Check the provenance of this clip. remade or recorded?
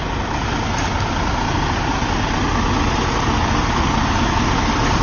recorded